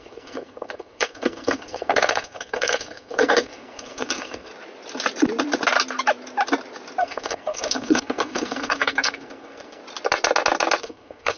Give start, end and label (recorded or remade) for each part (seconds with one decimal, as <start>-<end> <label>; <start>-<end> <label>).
0.0-4.5 remade; 4.5-7.0 recorded; 7.0-9.8 remade; 9.8-10.8 recorded; 10.8-11.4 remade